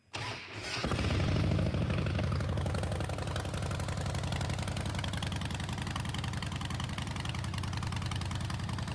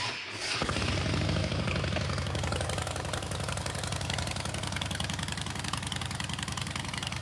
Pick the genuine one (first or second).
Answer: first